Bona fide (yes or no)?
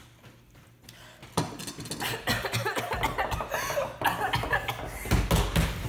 yes